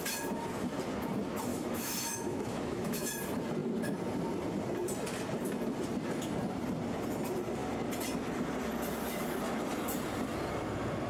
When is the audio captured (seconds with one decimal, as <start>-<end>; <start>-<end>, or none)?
0.0-1.5; 3.1-11.1